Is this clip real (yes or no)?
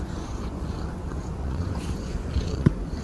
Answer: no